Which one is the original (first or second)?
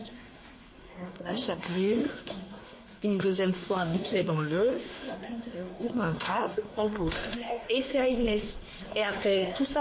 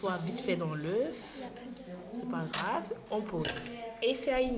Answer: second